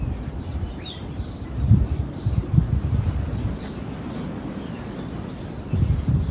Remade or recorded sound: remade